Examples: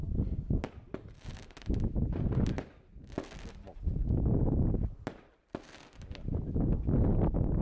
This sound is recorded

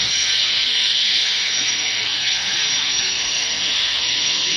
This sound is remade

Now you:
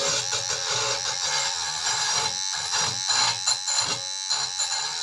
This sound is recorded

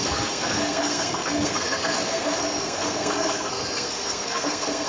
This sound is remade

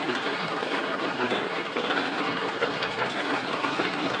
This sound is remade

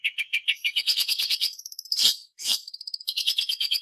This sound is remade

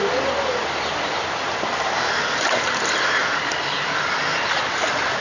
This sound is recorded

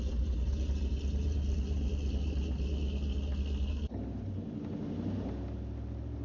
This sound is recorded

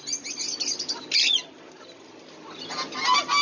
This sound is recorded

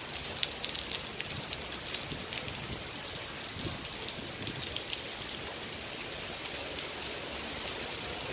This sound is recorded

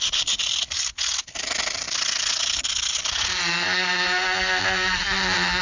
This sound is recorded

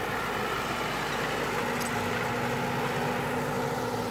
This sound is recorded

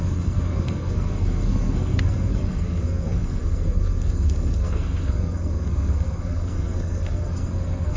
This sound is remade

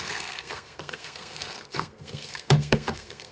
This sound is remade